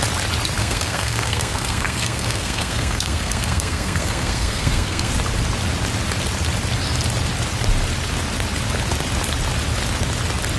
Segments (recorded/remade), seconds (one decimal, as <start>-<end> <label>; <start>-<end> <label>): 0.0-0.6 recorded; 0.6-5.1 remade; 5.1-10.6 recorded